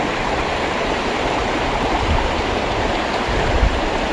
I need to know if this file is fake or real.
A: fake